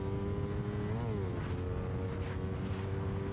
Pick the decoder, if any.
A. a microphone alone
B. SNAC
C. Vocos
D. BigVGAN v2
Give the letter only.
A